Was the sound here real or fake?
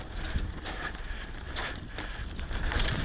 real